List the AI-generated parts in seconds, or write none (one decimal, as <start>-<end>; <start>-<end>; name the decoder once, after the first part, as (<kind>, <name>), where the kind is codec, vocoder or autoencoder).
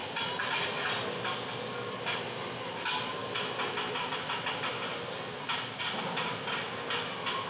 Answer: none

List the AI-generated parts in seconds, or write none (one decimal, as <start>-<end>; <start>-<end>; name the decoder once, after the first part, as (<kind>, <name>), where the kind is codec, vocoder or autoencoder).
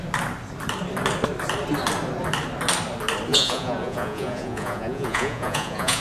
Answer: 3.3-6.0 (vocoder, Vocos)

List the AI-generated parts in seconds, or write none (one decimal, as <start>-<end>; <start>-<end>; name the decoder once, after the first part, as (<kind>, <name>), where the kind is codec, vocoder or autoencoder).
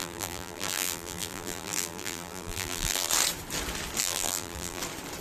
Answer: 0.0-3.1 (vocoder, BigVGAN v2); 4.0-4.8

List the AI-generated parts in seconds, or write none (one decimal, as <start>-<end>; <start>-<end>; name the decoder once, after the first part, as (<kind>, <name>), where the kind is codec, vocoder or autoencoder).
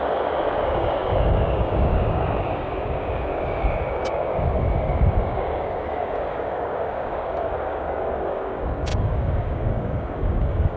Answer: 0.0-10.8 (codec, DAC)